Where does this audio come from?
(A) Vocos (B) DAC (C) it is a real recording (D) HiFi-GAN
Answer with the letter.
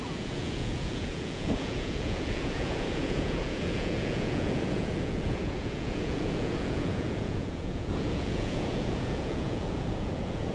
A